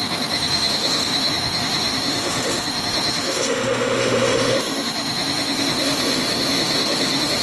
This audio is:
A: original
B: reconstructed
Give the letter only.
B